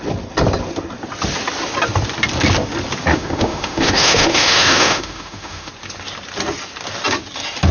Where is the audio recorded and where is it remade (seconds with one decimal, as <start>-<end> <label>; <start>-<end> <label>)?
0.0-3.1 recorded; 3.1-5.7 remade; 5.7-7.7 recorded